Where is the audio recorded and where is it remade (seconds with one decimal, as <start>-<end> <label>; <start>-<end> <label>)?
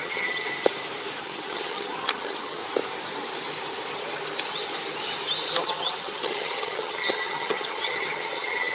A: 0.0-0.5 remade; 0.5-1.2 recorded; 1.2-2.6 remade; 2.6-5.6 recorded; 5.6-8.7 remade